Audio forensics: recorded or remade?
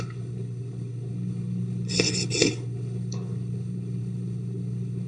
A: remade